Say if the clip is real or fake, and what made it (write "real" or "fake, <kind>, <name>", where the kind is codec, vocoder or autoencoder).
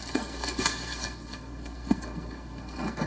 fake, codec, SNAC